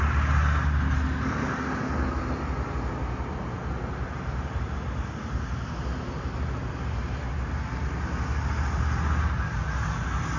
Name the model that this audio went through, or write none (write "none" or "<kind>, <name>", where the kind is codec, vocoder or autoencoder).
none